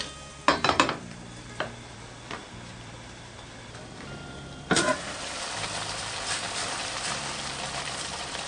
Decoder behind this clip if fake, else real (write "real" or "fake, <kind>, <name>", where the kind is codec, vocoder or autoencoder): fake, vocoder, BigVGAN v2